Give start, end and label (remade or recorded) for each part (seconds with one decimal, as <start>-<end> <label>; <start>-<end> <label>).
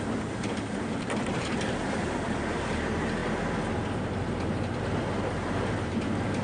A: 0.0-3.2 remade; 3.2-4.2 recorded; 4.2-6.4 remade